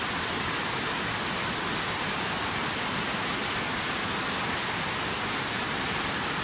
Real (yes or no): yes